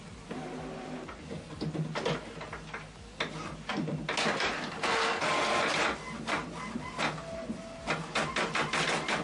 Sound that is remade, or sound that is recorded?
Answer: recorded